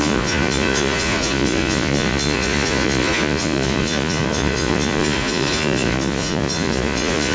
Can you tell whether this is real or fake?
fake